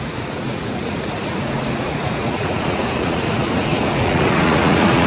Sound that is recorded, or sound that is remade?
remade